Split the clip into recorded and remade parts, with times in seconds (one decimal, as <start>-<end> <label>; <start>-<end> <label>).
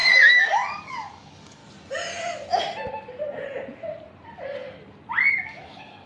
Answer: 0.0-1.6 remade; 1.6-5.3 recorded; 5.3-6.1 remade